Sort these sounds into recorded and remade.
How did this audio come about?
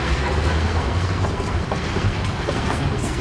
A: remade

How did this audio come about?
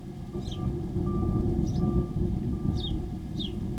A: recorded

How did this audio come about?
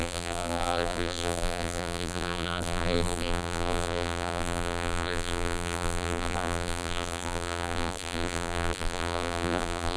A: remade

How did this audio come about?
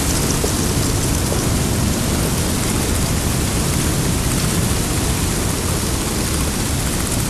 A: recorded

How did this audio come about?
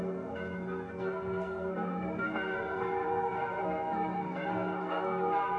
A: remade